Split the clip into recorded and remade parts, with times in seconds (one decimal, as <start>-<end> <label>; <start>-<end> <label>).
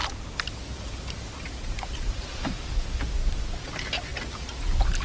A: 0.0-3.0 remade; 3.0-5.0 recorded